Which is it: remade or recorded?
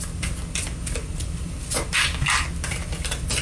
recorded